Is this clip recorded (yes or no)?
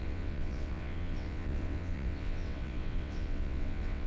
no